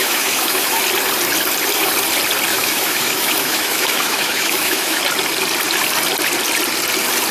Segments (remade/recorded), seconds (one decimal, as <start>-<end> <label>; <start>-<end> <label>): 0.0-0.8 remade; 0.8-2.5 recorded; 2.5-5.0 remade; 5.0-7.3 recorded